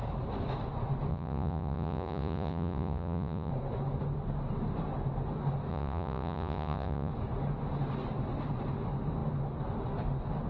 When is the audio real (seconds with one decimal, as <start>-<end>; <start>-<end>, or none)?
0.0-1.1; 3.5-5.7; 7.1-10.5